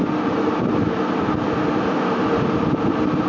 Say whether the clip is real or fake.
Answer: real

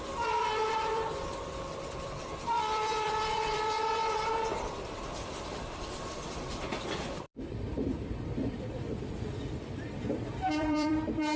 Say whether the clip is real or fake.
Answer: fake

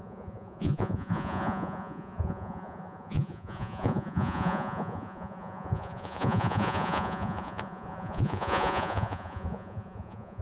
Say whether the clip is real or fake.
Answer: fake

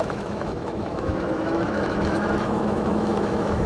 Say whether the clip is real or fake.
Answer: fake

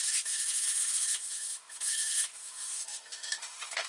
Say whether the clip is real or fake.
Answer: fake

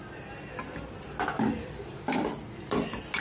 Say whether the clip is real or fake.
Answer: real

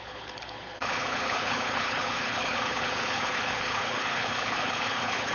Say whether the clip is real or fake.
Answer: fake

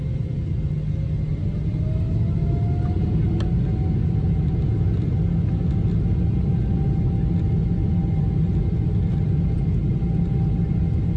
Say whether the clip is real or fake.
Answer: real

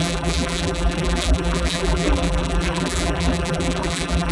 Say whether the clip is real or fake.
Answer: fake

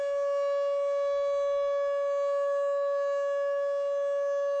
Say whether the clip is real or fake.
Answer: real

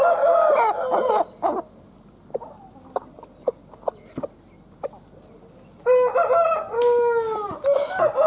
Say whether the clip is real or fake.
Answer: real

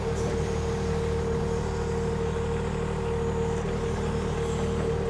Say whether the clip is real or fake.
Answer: real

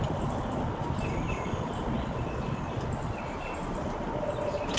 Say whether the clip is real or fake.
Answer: real